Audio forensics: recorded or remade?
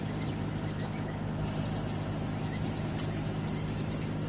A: recorded